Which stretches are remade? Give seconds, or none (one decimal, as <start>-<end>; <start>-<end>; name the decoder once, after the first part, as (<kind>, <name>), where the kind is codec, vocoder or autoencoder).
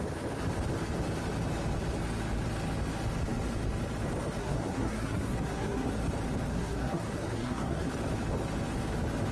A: 4.4-6.0 (codec, SNAC); 6.5-7.9